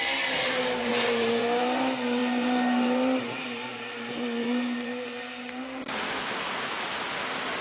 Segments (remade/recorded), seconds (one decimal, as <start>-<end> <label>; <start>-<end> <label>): 0.0-0.9 recorded; 0.9-1.6 remade; 1.6-2.2 recorded; 2.2-3.2 remade; 3.2-3.7 recorded; 3.7-5.5 remade; 5.5-7.6 recorded